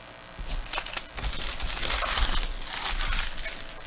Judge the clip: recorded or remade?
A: recorded